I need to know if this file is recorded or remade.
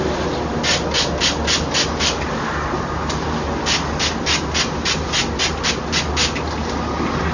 recorded